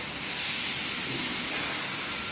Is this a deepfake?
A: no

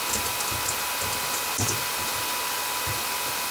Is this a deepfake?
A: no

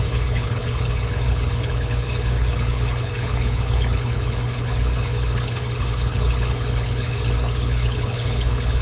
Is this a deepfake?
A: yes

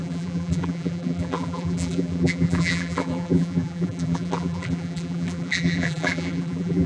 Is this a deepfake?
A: yes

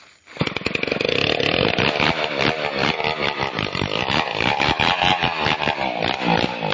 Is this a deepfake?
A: yes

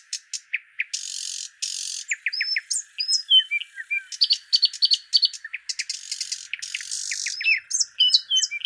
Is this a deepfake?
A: no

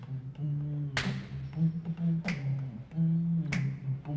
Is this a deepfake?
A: no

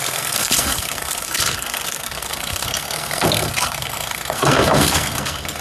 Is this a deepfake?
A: yes